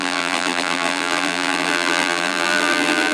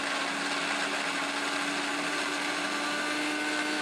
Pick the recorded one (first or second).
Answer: second